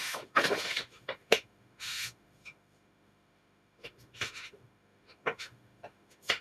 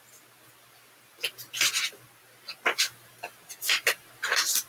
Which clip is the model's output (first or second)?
first